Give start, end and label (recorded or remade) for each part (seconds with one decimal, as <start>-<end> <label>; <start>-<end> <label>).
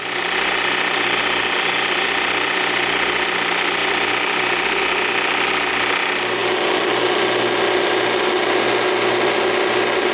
0.0-10.1 recorded